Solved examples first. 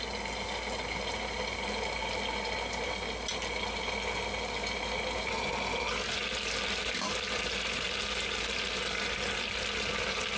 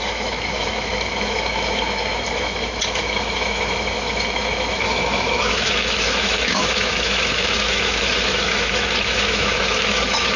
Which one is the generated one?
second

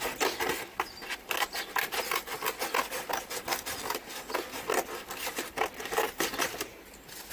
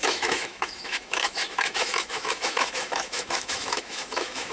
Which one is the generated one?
second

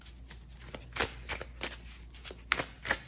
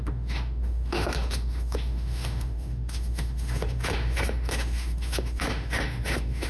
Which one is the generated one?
second